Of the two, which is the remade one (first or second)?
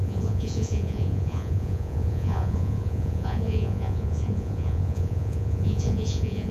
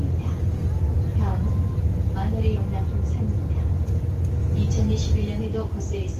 first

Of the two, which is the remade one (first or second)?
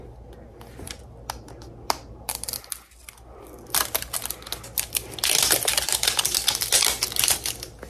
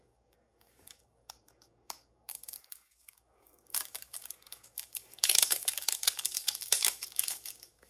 second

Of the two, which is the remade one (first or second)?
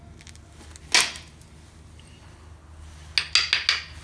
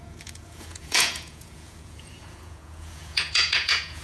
second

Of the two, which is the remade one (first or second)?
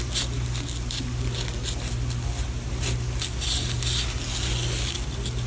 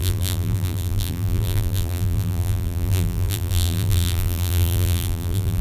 second